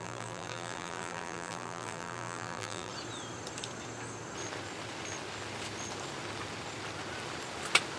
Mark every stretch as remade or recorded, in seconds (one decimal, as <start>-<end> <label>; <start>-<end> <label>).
0.0-2.9 remade; 2.9-8.0 recorded